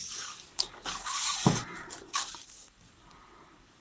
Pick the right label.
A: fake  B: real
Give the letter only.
A